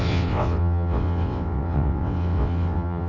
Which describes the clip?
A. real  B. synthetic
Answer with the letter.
B